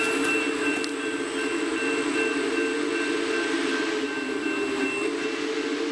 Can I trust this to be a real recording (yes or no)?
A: yes